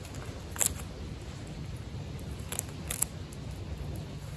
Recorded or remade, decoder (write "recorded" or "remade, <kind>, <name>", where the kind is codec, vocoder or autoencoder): recorded